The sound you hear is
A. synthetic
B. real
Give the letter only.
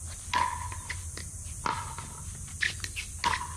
B